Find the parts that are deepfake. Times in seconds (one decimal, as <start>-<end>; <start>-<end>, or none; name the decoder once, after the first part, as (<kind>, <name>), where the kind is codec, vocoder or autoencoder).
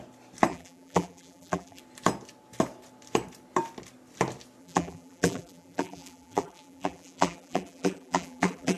0.5-1.8 (vocoder, BigVGAN v2); 4.6-8.8